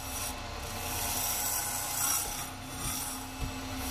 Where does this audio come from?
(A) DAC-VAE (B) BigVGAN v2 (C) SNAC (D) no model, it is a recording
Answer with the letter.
D